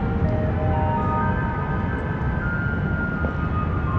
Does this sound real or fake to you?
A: real